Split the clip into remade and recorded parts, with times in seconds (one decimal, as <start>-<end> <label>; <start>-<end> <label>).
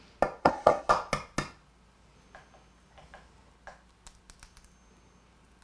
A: 0.0-0.4 recorded; 0.4-0.9 remade; 0.9-5.6 recorded